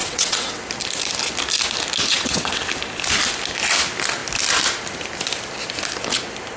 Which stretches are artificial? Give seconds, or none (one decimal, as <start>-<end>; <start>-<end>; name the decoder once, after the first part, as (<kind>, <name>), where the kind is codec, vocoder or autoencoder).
0.0-0.6 (vocoder, WaveNeXt); 2.1-2.6